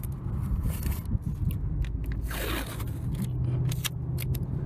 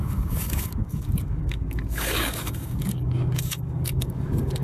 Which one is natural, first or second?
first